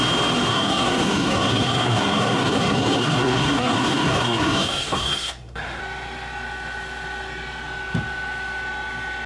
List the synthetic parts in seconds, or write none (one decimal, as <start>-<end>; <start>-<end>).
0.5-5.8